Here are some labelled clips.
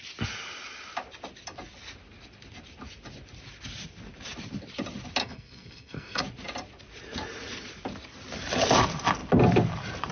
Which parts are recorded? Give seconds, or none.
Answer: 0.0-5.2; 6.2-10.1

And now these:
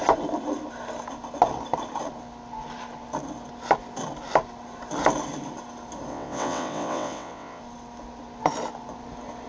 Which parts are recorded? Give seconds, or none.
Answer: 0.0-6.1; 7.6-9.5